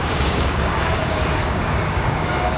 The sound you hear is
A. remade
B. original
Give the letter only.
A